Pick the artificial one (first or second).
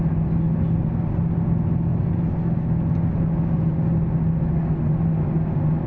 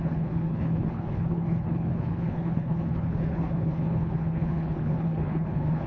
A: second